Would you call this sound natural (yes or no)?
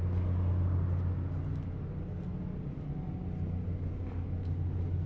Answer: yes